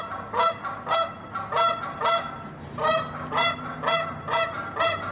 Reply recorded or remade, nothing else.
recorded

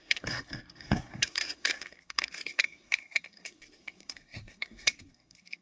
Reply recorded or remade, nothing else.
remade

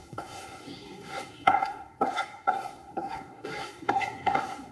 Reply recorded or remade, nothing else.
remade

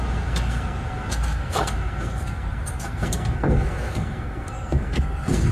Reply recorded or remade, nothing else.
remade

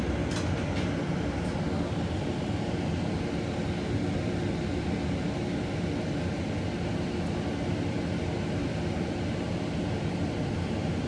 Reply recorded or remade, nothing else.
recorded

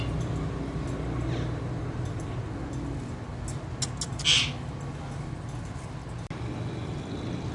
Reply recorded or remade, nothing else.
recorded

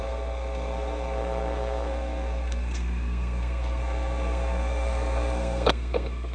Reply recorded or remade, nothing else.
remade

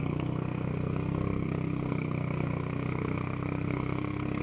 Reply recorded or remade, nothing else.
remade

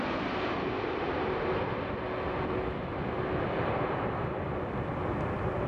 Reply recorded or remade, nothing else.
recorded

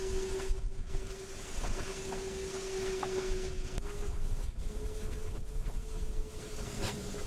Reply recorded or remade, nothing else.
remade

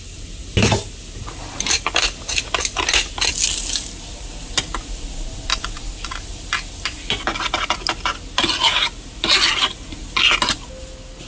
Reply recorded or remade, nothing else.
recorded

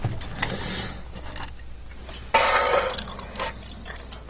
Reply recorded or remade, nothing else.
recorded